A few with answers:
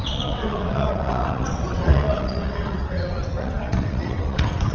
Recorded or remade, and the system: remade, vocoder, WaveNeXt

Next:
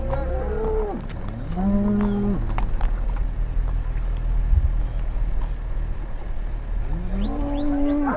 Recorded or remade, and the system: recorded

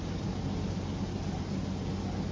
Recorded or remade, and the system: recorded